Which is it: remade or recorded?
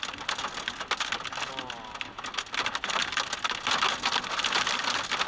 recorded